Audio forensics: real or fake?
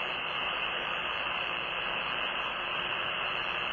fake